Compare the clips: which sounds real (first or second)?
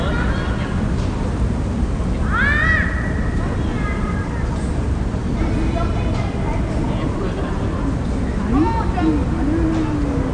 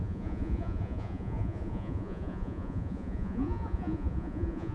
first